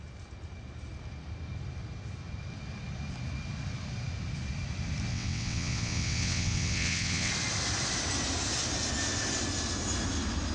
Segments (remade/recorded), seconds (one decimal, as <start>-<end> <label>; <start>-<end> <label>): 0.0-5.1 recorded; 5.1-7.3 remade; 7.3-10.5 recorded